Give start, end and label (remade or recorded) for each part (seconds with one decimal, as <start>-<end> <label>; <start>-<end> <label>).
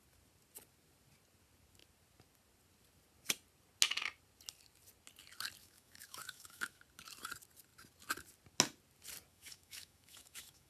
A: 0.0-5.6 recorded; 5.6-6.8 remade; 6.8-9.3 recorded; 9.3-10.7 remade